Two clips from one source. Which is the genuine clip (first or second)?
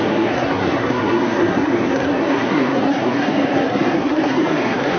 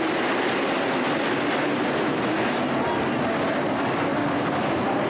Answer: second